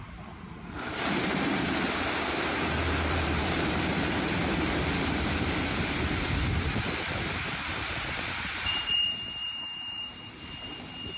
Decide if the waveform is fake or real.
fake